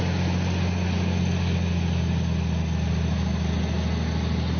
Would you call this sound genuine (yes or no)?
yes